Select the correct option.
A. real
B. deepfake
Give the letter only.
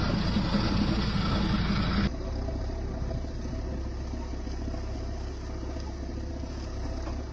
A